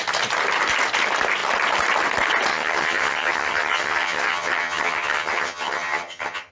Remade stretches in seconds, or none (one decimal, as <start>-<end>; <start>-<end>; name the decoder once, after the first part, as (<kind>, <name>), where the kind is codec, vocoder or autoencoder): 2.5-6.5 (vocoder, HiFi-GAN)